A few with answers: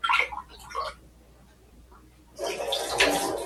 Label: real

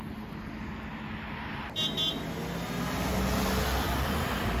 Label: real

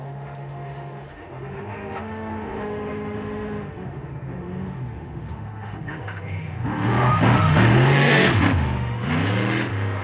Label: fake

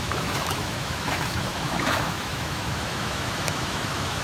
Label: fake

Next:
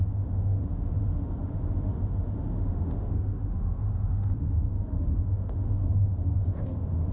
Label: fake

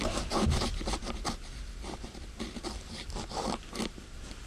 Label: real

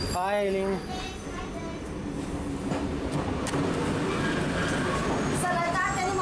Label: real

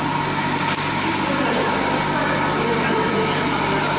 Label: real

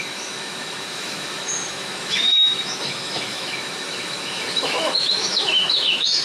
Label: fake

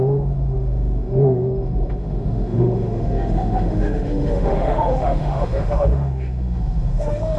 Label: fake